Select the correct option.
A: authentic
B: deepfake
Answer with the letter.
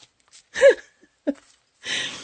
A